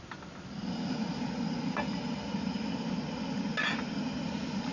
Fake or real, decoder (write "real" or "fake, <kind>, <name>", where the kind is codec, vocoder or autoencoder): real